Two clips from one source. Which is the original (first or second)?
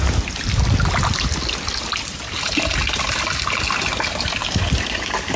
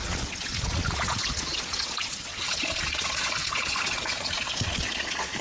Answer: first